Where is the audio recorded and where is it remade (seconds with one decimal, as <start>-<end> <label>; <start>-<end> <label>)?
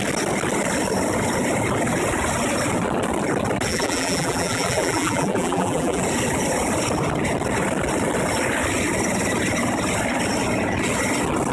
0.0-3.7 recorded; 3.7-6.0 remade; 6.0-11.5 recorded